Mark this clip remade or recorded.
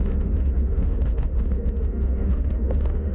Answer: remade